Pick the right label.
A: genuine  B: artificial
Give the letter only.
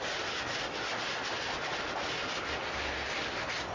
A